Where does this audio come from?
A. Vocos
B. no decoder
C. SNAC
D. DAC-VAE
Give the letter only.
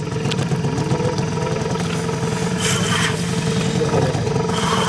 B